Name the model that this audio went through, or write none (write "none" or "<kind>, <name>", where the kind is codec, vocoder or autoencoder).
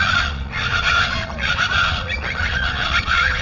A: vocoder, Vocos